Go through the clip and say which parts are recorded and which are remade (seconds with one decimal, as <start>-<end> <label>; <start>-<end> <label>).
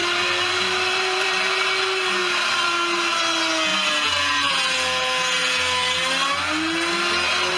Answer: 0.0-1.5 remade; 1.5-2.2 recorded; 2.2-3.2 remade; 3.2-3.7 recorded; 3.7-4.5 remade; 4.5-7.6 recorded